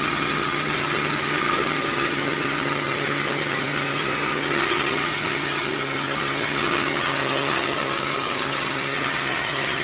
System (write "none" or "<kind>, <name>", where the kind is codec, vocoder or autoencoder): vocoder, HiFi-GAN